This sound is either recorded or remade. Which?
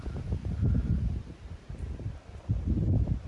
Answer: remade